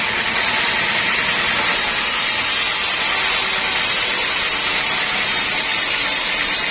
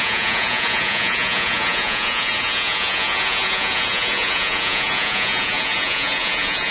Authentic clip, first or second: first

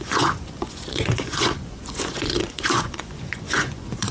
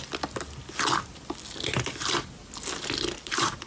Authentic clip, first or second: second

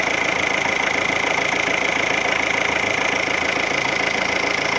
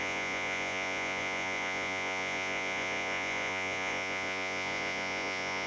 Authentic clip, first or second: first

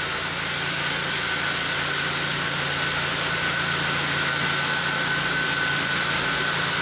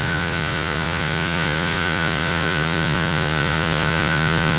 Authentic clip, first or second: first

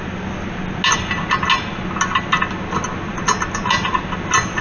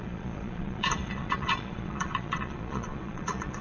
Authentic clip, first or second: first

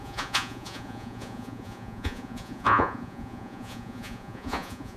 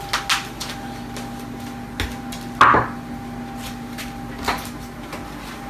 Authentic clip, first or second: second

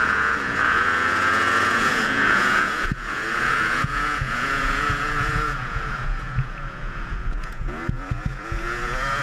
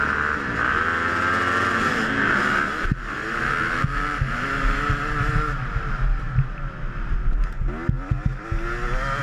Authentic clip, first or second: second